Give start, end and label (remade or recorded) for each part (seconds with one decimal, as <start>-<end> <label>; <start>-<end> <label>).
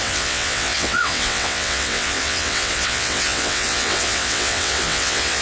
0.0-5.4 remade